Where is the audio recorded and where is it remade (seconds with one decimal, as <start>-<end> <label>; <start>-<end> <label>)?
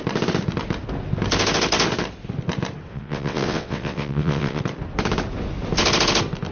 0.0-2.9 recorded; 2.9-4.6 remade; 4.6-6.5 recorded